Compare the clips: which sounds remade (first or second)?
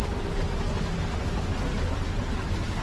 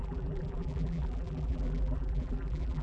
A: second